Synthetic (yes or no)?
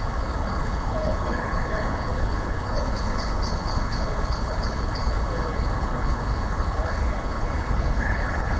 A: yes